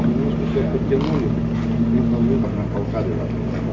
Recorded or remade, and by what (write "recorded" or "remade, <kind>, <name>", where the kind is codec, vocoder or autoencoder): recorded